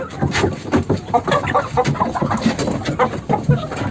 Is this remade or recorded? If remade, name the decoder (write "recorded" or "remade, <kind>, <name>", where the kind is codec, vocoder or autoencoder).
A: recorded